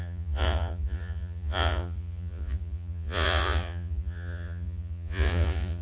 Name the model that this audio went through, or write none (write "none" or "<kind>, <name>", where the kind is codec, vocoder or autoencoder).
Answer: vocoder, Vocos